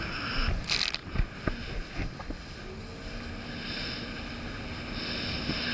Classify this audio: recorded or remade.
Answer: recorded